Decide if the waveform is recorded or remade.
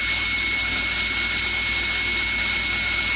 recorded